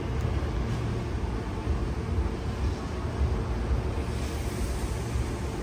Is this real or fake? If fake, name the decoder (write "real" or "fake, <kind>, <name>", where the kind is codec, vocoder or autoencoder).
real